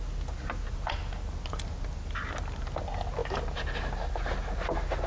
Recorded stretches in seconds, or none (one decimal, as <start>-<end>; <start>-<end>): 0.0-5.1